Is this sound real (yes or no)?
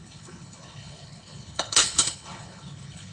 no